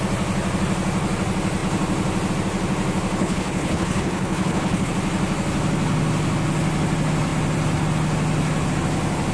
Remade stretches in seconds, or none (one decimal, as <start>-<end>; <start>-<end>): 3.2-4.9